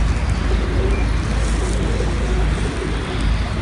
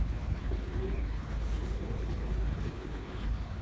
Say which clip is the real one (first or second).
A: first